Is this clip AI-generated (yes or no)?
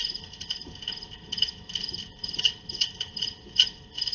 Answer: no